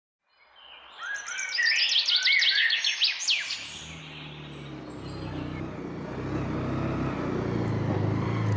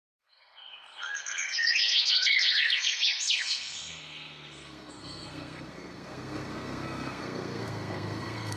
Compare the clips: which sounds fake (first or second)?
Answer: second